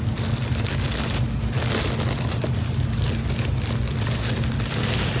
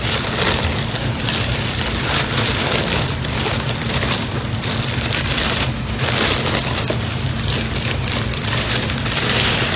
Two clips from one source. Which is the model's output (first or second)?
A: second